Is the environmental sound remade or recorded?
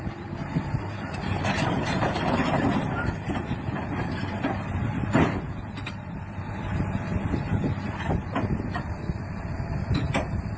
remade